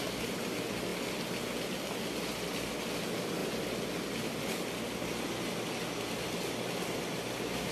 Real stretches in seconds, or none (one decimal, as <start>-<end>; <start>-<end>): 0.0-7.7